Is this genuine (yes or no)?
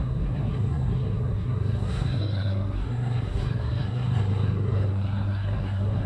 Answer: no